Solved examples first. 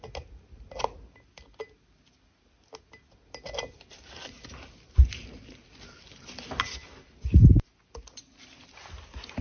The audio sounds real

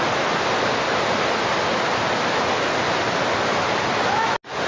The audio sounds real